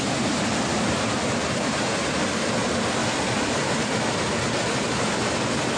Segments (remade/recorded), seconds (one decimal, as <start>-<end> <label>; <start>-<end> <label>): 0.0-0.7 recorded; 0.7-1.8 remade; 1.8-5.8 recorded